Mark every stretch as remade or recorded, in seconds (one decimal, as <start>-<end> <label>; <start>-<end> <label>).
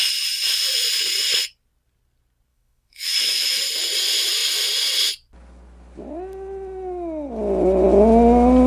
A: 0.0-2.5 recorded; 2.5-3.6 remade; 3.6-8.7 recorded